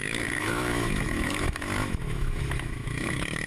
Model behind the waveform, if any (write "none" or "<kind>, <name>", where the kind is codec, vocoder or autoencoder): autoencoder, DAC-VAE